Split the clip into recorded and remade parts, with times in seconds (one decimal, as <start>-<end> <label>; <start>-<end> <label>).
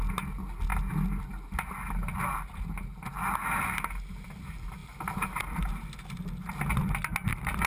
0.0-4.8 recorded; 4.8-5.6 remade; 5.6-7.7 recorded